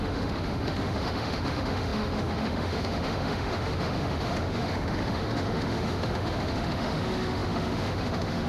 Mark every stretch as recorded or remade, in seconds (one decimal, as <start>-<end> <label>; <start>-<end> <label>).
0.0-8.5 remade

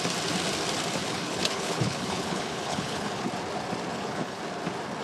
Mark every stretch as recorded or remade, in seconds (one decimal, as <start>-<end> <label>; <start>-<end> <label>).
0.0-1.0 recorded; 1.0-3.3 remade; 3.3-3.9 recorded; 3.9-4.4 remade; 4.4-5.0 recorded

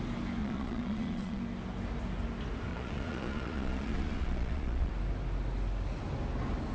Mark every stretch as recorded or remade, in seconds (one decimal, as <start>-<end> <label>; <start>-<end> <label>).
0.0-0.4 recorded; 0.4-1.4 remade; 1.4-2.7 recorded; 2.7-4.9 remade; 4.9-6.7 recorded

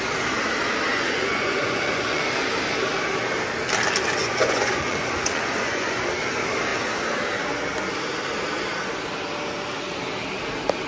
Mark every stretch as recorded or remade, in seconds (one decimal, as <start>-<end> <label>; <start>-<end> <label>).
0.0-0.9 recorded; 0.9-2.2 remade; 2.2-4.2 recorded; 4.2-6.0 remade; 6.0-10.9 recorded

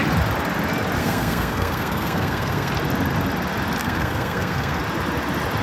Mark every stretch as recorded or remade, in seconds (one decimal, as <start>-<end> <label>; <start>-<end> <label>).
0.0-1.0 recorded; 1.0-2.7 remade; 2.7-3.8 recorded; 3.8-4.8 remade; 4.8-5.6 recorded

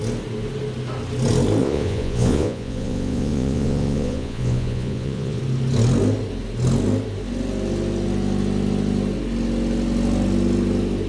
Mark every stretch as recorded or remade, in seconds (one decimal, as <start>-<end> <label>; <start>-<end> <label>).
0.0-1.6 recorded; 1.6-5.4 remade; 5.4-11.1 recorded

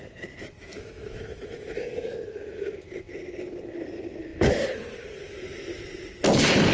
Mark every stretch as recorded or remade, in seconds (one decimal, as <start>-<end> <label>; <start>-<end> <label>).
0.0-0.6 recorded; 0.6-2.7 remade; 2.7-6.7 recorded

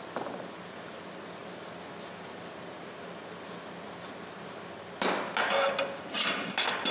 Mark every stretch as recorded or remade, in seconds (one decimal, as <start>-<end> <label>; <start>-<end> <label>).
0.0-6.9 recorded